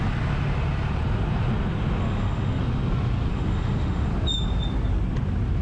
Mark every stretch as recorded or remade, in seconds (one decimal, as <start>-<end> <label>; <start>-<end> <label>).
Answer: 0.0-2.0 recorded; 2.0-2.6 remade; 2.6-3.3 recorded; 3.3-4.1 remade; 4.1-5.6 recorded